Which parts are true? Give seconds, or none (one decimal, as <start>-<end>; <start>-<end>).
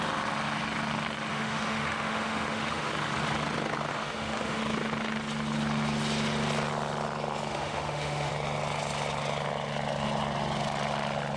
0.0-1.3; 2.9-3.9; 4.6-7.5; 8.3-11.4